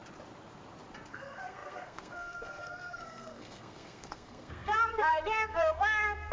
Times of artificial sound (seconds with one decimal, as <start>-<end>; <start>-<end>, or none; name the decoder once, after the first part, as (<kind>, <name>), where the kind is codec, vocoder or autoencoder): 1.1-6.3 (codec, SNAC)